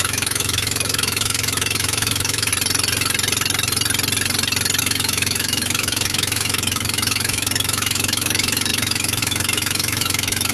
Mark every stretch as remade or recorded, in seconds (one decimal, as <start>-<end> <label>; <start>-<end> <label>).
0.0-2.5 remade; 2.5-4.8 recorded; 4.8-10.5 remade